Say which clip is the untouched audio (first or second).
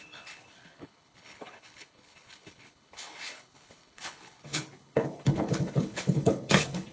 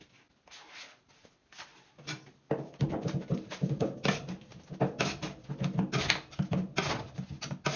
second